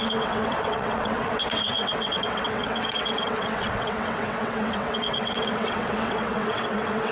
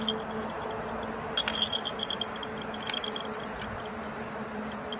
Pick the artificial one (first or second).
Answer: first